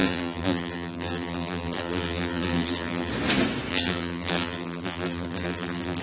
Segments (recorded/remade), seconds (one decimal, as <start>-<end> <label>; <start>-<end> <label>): 0.0-3.1 remade; 3.1-3.7 recorded; 3.7-6.0 remade